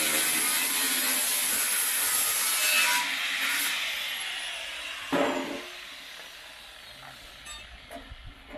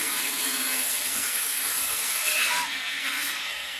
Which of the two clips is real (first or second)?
first